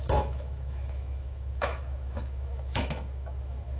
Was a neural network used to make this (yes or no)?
yes